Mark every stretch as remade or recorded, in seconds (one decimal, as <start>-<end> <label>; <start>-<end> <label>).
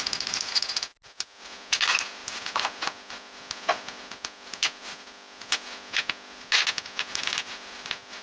0.0-8.2 recorded